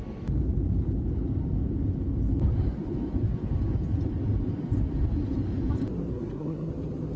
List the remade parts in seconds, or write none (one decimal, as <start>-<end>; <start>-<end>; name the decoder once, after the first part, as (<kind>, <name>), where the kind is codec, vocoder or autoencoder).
6.1-6.7 (codec, SNAC)